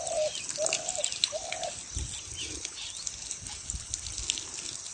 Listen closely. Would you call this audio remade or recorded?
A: recorded